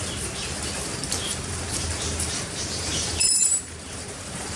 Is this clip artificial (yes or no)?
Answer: yes